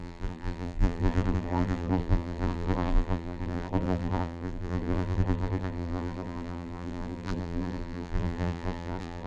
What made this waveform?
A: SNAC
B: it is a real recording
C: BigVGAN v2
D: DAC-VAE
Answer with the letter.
C